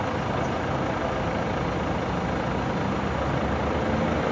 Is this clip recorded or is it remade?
recorded